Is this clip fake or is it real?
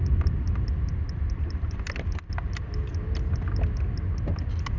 real